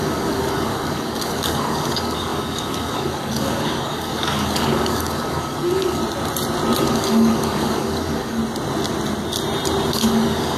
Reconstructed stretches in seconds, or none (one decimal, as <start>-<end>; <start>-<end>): 0.0-6.0; 6.8-8.4; 9.9-10.6

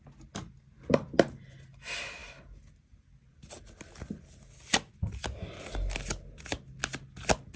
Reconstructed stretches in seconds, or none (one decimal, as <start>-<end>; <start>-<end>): none

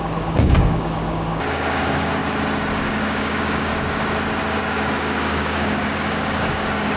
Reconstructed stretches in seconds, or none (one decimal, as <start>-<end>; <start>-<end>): 0.0-2.2; 2.8-3.7; 4.6-7.0

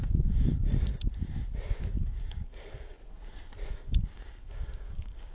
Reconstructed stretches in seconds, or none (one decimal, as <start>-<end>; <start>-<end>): 0.0-0.9; 1.9-3.0; 3.7-5.3

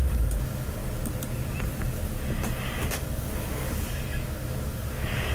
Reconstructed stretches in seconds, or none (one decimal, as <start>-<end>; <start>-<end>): 0.0-0.8; 2.6-5.3

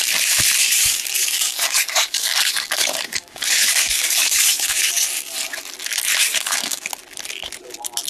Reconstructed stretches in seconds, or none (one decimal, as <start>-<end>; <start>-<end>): 0.6-4.9; 6.2-6.9

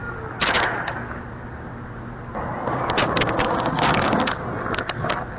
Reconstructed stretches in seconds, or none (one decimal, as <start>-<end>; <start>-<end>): 3.0-4.3